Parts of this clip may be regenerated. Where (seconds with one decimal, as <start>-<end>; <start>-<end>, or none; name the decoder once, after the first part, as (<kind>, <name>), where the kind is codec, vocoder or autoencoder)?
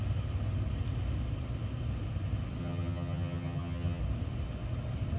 2.6-4.0 (vocoder, HiFi-GAN)